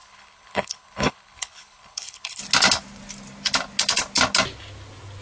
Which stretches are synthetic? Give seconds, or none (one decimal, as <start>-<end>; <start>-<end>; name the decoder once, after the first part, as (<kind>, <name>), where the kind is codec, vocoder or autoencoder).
0.0-2.4 (codec, HILCodec)